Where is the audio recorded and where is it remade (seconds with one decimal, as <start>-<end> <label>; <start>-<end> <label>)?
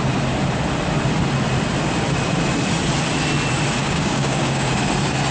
0.0-3.8 recorded; 3.8-4.7 remade; 4.7-5.3 recorded